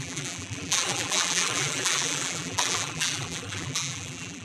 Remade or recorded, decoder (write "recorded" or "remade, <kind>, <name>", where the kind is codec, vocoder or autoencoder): remade, vocoder, BigVGAN v2